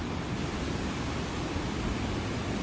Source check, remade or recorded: recorded